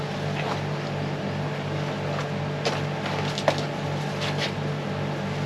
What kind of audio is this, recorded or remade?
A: recorded